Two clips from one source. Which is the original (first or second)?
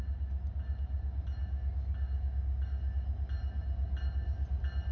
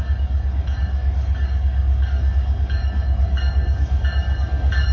first